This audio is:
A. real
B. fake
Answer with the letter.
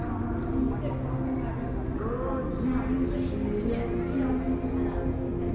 A